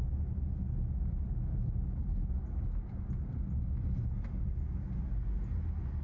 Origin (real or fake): real